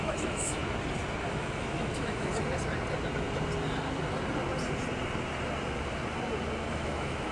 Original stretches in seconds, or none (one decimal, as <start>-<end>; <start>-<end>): 0.6-1.3; 2.3-6.7